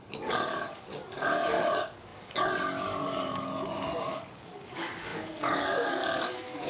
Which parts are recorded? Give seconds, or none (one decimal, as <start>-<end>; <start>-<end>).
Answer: none